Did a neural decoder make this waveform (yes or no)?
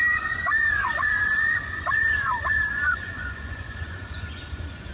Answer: yes